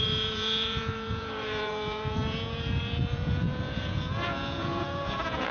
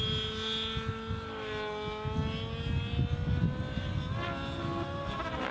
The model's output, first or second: first